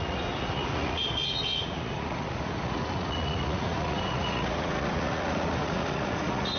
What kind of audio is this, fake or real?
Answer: fake